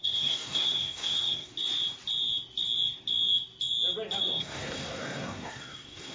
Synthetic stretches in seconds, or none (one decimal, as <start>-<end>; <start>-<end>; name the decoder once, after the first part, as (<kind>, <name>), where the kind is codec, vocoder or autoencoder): 0.0-1.5 (codec, SNAC); 4.2-6.1